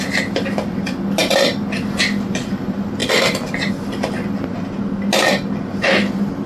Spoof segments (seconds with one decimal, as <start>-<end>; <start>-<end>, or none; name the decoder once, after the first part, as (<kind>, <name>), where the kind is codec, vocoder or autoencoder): 3.0-3.7 (vocoder, BigVGAN v2)